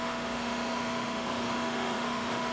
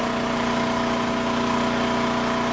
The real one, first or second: second